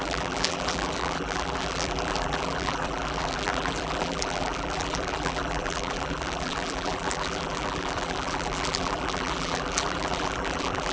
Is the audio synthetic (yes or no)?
yes